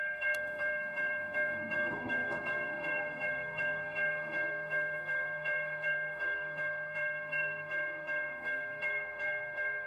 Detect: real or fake fake